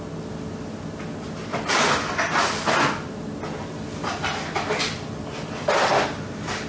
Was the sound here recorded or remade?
recorded